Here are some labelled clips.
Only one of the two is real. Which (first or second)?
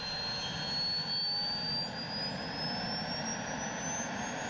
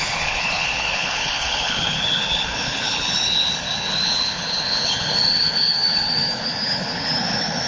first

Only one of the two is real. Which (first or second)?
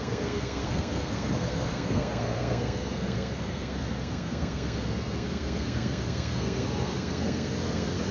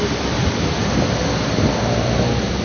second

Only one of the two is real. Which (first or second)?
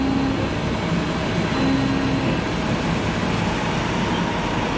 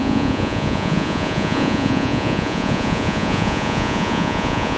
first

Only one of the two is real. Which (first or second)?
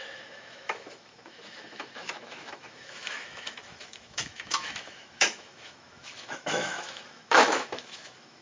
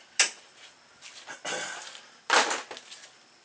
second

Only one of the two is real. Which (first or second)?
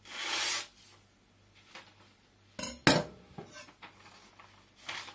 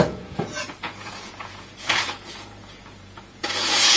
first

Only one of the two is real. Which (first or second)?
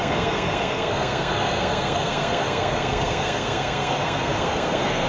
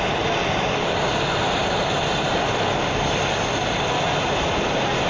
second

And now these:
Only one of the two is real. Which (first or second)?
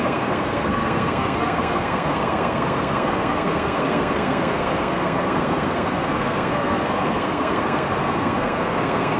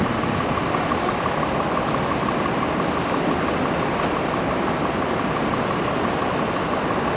second